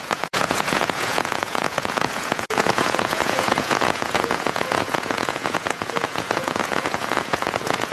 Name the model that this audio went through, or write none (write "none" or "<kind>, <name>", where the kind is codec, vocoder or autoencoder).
vocoder, Vocos